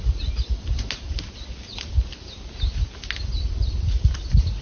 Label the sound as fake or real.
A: real